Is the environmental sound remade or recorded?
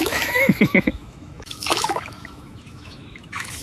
remade